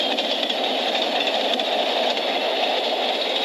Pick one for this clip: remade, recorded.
recorded